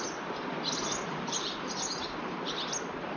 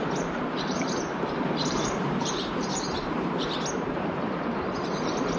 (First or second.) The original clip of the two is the first